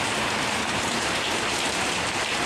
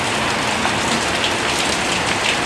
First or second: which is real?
second